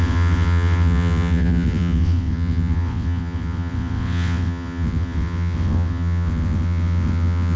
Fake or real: fake